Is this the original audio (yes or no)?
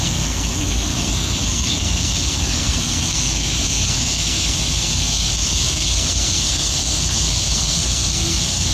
no